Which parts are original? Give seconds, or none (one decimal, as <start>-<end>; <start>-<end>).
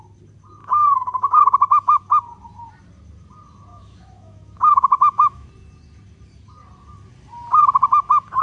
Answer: 0.0-0.6; 2.0-3.7; 5.5-8.4